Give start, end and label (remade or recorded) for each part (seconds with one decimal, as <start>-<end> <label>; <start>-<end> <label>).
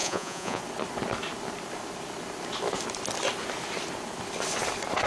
0.0-0.6 remade; 0.6-5.1 recorded